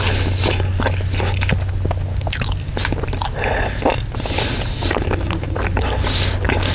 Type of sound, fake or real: real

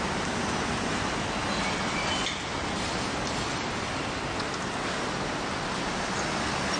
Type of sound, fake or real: real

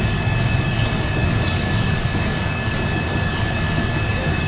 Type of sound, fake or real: fake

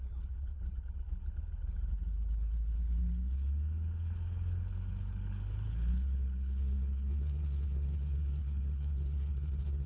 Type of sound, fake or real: fake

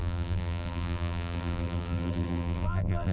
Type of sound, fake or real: fake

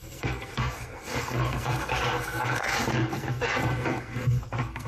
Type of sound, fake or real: fake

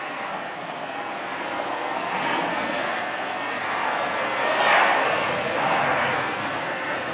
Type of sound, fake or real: fake